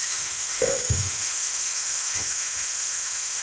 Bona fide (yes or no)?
no